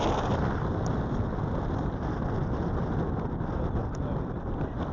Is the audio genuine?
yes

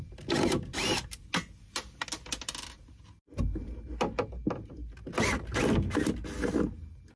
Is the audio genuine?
yes